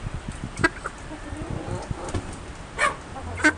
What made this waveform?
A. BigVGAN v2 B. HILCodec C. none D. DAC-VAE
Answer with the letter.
C